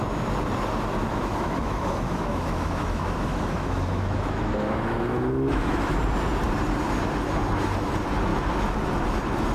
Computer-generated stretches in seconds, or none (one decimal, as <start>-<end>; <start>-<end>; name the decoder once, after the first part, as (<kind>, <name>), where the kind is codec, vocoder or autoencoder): 1.0-6.0 (autoencoder, DAC-VAE)